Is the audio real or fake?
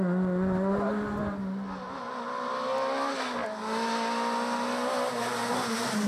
real